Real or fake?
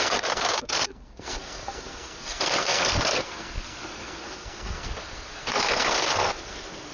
fake